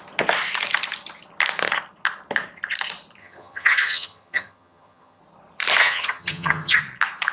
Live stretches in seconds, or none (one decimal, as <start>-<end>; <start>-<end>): 0.0-3.2; 5.2-5.8; 6.8-7.3